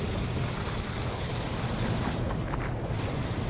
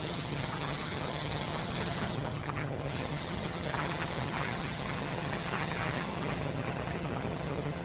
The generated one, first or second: second